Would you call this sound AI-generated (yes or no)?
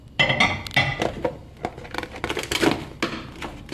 no